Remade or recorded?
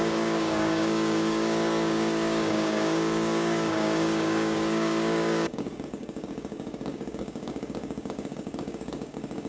remade